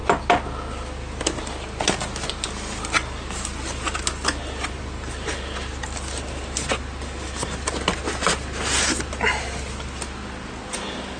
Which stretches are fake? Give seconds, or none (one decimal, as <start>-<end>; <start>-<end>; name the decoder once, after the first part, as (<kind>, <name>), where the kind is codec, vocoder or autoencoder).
none